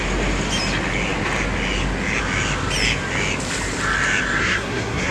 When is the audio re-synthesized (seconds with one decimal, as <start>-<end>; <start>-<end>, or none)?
4.4-5.1